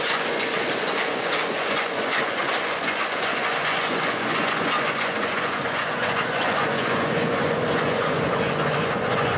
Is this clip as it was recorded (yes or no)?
no